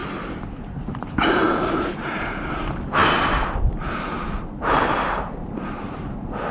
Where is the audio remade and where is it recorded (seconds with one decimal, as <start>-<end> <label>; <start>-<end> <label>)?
0.0-3.0 remade; 3.0-3.6 recorded; 3.6-6.5 remade